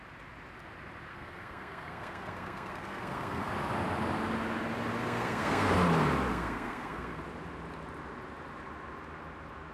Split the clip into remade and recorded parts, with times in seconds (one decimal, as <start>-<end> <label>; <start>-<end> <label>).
0.0-1.1 recorded; 1.1-3.5 remade; 3.5-5.0 recorded; 5.0-5.7 remade; 5.7-6.3 recorded; 6.3-7.2 remade; 7.2-9.7 recorded